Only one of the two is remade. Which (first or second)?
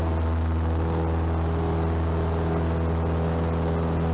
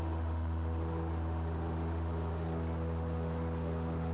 second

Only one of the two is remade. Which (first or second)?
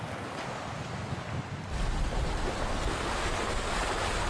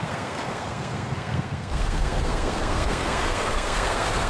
second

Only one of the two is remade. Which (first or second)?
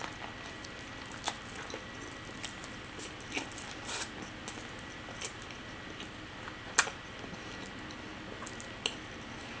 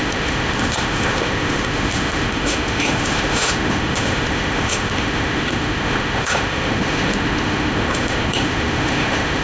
second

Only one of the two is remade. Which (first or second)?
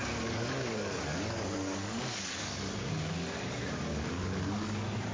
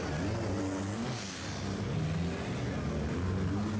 first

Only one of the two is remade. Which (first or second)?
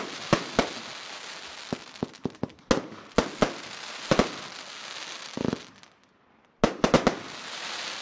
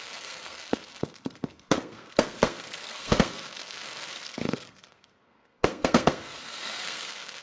second